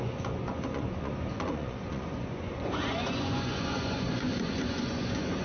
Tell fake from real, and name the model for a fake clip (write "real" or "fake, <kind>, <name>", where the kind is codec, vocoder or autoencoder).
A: fake, vocoder, Vocos